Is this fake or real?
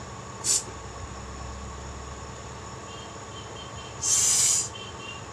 real